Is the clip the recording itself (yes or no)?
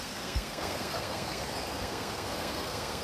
no